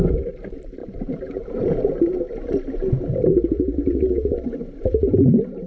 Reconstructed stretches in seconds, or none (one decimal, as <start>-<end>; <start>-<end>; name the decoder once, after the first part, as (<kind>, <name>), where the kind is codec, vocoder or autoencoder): 0.0-3.7 (vocoder, BigVGAN v2); 4.5-5.7